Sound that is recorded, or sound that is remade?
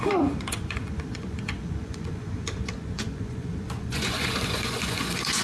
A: remade